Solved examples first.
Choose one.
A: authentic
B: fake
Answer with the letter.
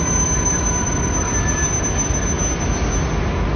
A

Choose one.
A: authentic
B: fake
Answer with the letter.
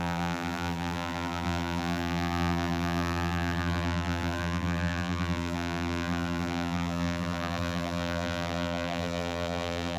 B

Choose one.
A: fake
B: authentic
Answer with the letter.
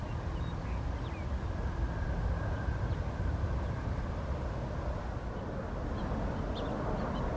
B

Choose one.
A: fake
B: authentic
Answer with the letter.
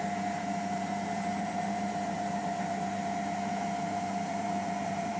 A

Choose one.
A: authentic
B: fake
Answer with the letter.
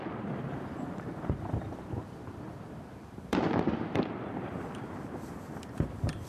B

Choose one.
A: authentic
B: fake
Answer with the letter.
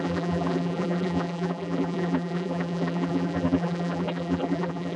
B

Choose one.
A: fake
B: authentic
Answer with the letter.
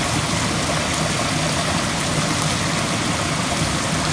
B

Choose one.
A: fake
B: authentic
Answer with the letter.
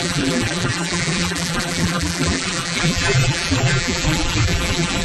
A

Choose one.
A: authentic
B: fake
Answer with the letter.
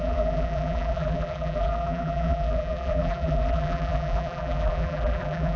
B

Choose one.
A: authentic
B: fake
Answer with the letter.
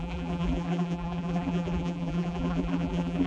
B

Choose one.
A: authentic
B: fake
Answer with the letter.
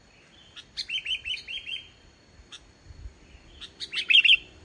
A